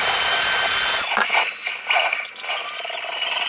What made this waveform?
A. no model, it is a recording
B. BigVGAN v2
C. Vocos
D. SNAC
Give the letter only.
A